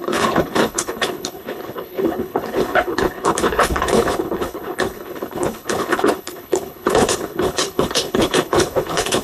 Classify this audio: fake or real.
fake